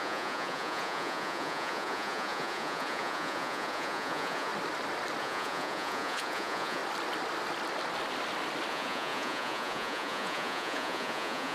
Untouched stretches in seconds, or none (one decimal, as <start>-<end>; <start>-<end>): 4.5-5.2; 6.8-8.7